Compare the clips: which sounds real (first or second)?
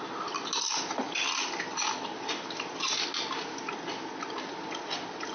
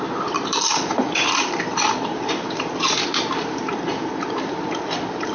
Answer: first